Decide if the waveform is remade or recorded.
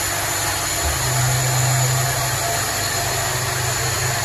recorded